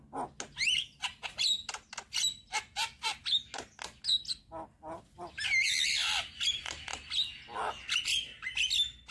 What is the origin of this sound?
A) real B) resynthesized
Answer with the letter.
A